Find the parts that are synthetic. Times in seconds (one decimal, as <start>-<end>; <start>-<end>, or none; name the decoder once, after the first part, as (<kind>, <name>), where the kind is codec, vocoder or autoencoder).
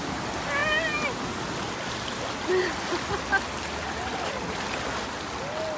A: none